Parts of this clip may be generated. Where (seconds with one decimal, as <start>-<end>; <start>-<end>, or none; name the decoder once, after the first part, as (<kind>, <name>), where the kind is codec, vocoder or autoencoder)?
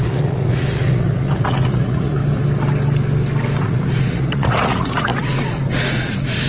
0.0-2.2 (vocoder, Vocos); 3.6-6.5